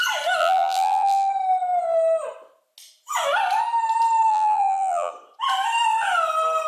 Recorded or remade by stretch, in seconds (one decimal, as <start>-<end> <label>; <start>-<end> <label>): 0.0-0.4 recorded; 0.4-1.3 remade; 1.3-4.3 recorded; 4.3-5.1 remade; 5.1-6.7 recorded